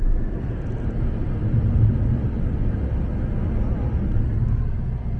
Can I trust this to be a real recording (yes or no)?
yes